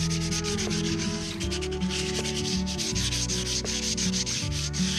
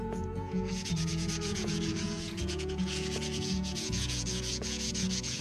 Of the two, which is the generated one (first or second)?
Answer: second